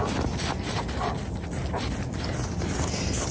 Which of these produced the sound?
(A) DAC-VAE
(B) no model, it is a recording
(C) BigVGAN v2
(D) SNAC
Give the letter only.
B